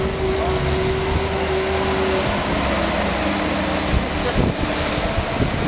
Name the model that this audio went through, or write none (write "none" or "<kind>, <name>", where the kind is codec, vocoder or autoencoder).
none